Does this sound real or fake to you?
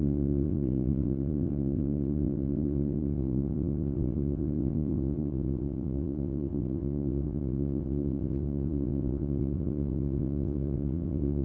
fake